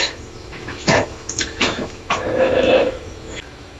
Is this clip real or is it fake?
fake